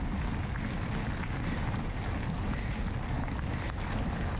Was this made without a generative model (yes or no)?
yes